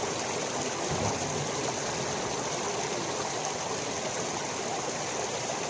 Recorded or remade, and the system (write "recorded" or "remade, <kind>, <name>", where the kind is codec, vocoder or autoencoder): recorded